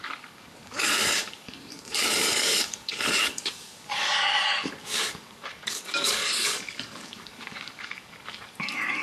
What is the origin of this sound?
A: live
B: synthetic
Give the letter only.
B